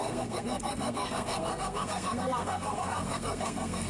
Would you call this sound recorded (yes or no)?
no